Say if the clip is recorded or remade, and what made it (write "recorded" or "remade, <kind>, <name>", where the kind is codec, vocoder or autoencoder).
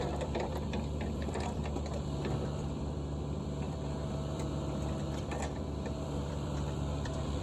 remade, vocoder, BigVGAN v2